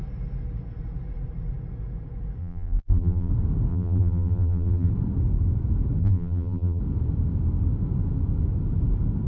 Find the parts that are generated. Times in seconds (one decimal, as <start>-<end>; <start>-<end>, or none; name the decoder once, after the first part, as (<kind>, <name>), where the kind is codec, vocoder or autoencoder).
2.4-3.3 (vocoder, BigVGAN v2); 3.7-4.9; 6.0-6.8